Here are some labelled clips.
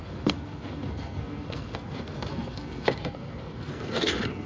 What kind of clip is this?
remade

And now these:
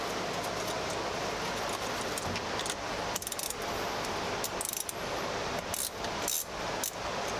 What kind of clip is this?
recorded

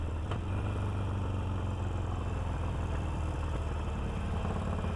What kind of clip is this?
recorded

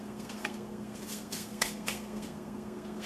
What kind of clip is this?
remade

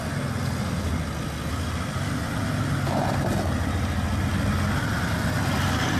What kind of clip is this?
recorded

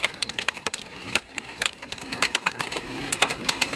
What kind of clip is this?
remade